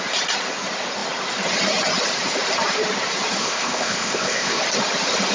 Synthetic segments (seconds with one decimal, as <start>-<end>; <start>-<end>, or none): 3.4-4.6